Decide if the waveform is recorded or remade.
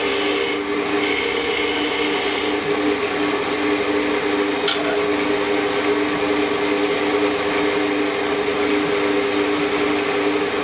recorded